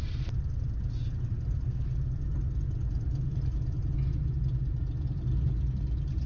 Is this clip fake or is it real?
real